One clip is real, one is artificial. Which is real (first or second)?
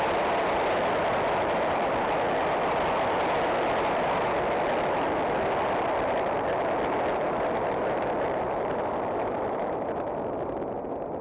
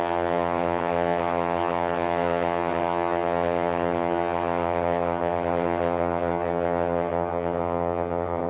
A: first